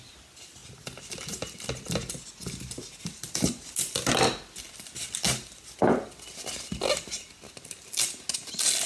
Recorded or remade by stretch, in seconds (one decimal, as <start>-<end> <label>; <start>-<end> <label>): 0.0-8.9 recorded